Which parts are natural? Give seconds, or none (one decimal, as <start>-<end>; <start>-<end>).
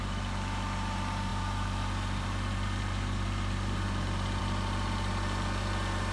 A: none